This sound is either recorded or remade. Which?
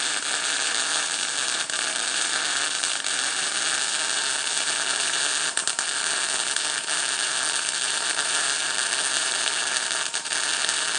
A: remade